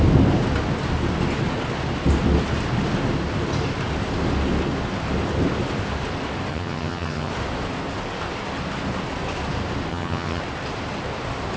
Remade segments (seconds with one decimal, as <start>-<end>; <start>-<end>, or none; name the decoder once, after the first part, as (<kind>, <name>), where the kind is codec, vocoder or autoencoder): 6.5-7.3 (vocoder, HiFi-GAN); 9.9-10.4